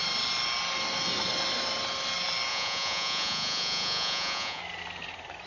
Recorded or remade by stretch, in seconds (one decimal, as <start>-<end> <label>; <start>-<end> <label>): 0.0-2.5 recorded; 2.5-4.6 remade; 4.6-5.5 recorded